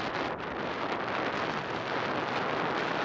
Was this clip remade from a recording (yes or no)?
no